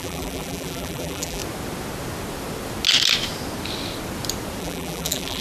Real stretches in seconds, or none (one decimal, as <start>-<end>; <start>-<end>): 1.4-4.6